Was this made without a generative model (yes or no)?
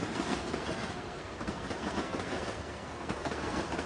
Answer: no